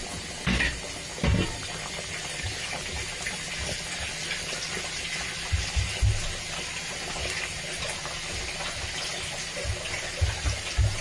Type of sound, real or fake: real